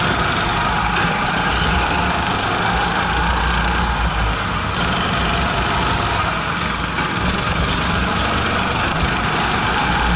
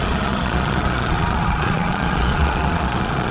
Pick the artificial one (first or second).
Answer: second